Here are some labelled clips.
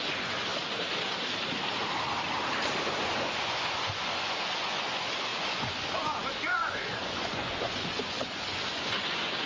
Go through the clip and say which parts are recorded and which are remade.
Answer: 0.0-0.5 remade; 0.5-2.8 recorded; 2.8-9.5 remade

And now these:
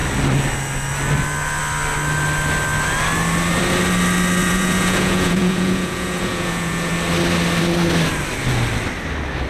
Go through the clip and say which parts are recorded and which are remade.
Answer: 0.0-4.4 recorded; 4.4-6.9 remade; 6.9-9.5 recorded

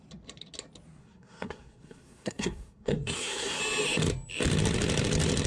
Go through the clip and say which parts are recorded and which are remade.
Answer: 0.0-1.0 recorded; 1.0-3.6 remade; 3.6-5.5 recorded

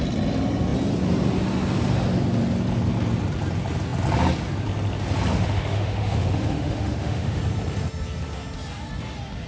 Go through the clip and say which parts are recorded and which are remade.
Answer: 0.0-5.3 recorded; 5.3-7.4 remade; 7.4-9.5 recorded

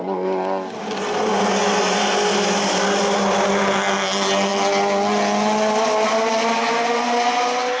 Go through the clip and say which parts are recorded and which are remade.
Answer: 0.0-7.8 recorded

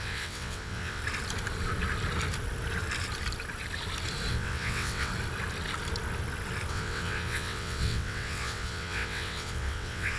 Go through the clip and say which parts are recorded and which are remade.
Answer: 0.0-1.0 remade; 1.0-4.3 recorded; 4.3-5.1 remade; 5.1-6.7 recorded; 6.7-10.2 remade

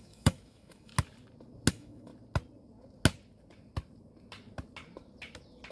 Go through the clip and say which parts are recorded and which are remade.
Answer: 0.0-0.9 remade; 0.9-1.7 recorded; 1.7-2.1 remade; 2.1-5.7 recorded